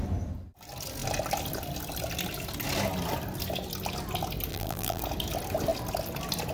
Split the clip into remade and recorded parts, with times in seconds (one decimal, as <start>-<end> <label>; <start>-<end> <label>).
0.0-4.5 recorded; 4.5-5.0 remade; 5.0-6.5 recorded